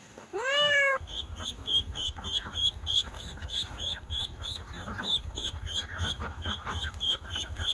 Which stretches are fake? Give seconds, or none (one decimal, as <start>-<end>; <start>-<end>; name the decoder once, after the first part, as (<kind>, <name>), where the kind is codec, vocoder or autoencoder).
0.0-7.7 (codec, DAC)